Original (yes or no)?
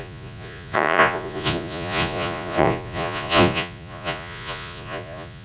no